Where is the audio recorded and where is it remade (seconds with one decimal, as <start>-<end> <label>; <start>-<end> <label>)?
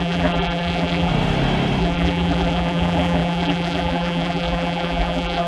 0.0-1.1 remade; 1.1-1.8 recorded; 1.8-5.5 remade